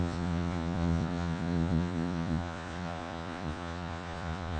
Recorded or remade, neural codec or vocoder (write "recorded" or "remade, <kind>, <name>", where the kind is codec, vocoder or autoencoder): remade, vocoder, Vocos